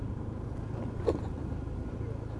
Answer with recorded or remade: recorded